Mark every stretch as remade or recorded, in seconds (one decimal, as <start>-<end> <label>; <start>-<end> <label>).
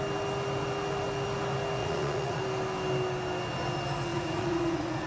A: 0.0-1.8 recorded; 1.8-2.4 remade; 2.4-4.1 recorded; 4.1-5.1 remade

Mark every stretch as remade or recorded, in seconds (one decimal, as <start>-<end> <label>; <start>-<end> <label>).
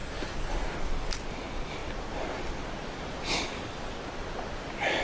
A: 0.0-5.0 recorded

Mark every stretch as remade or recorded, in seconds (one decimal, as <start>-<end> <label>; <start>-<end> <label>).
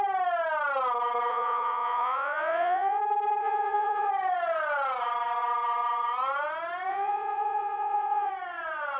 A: 0.0-1.3 recorded; 1.3-3.0 remade; 3.0-3.4 recorded; 3.4-4.1 remade; 4.1-6.9 recorded; 6.9-8.3 remade; 8.3-9.0 recorded